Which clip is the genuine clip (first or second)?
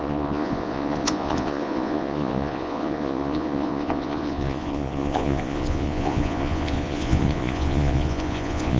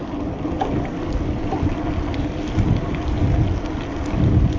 second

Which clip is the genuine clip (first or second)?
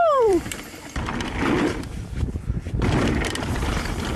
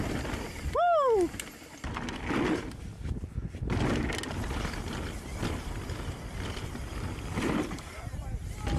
second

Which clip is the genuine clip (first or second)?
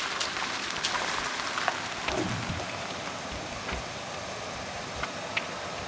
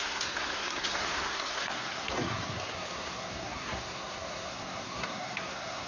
first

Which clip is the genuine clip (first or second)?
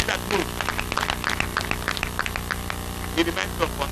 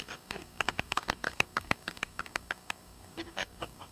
first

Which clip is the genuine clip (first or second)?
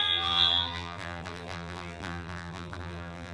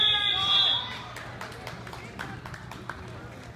second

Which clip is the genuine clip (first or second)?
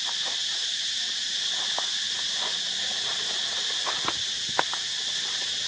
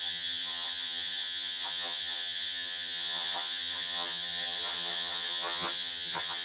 first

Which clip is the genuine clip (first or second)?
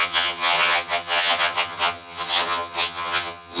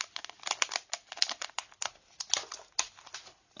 second